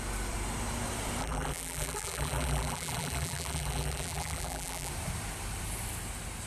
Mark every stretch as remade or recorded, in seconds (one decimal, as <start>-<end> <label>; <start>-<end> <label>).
0.0-1.2 recorded; 1.2-4.9 remade; 4.9-6.5 recorded